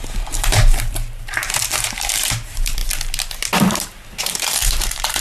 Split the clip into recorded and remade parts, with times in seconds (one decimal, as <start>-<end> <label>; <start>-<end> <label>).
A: 0.0-2.8 remade; 2.8-4.2 recorded; 4.2-5.2 remade